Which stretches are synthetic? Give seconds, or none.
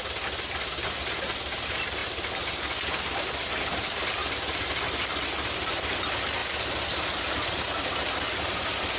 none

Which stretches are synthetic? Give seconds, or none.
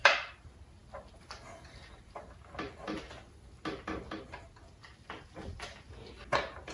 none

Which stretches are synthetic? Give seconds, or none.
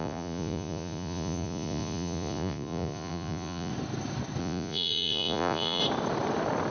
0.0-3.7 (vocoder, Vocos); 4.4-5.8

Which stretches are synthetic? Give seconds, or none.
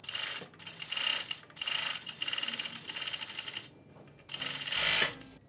none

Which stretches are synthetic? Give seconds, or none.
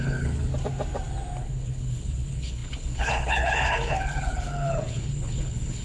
0.0-0.5 (codec, HILCodec); 1.4-5.8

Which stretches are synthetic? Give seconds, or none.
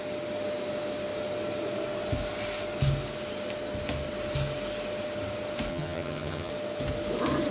5.7-6.5 (vocoder, HiFi-GAN)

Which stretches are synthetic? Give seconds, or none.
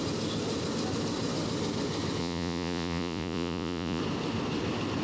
2.2-4.0 (vocoder, Vocos)